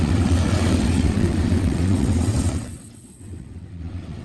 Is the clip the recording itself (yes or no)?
no